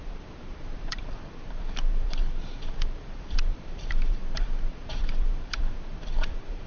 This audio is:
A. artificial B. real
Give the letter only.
A